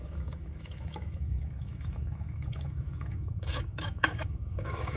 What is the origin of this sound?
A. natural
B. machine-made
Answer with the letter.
B